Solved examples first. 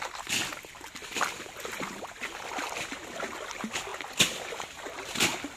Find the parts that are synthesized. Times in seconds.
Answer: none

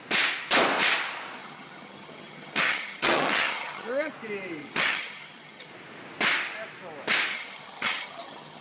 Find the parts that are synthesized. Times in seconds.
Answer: 1.4-4.1 (vocoder, HiFi-GAN); 4.6-5.7; 7.3-8.6

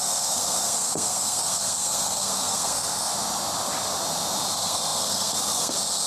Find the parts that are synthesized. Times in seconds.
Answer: 0.0-3.1 (codec, SNAC); 4.5-6.1

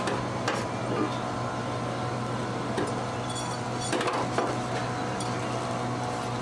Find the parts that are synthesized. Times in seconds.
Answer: none

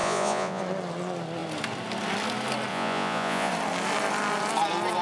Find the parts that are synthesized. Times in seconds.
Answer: 0.0-0.6 (vocoder, Vocos); 2.7-3.5